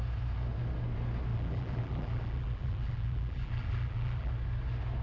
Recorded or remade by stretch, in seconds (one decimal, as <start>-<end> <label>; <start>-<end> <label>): 0.0-1.3 recorded; 1.3-4.3 remade; 4.3-5.0 recorded